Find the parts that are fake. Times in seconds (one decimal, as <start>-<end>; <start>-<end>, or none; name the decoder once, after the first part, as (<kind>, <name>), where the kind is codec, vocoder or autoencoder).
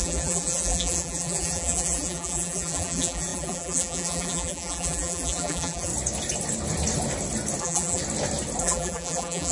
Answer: 0.0-5.9 (vocoder, BigVGAN v2); 7.6-8.0; 8.6-9.5